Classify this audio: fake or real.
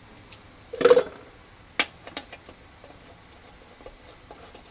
real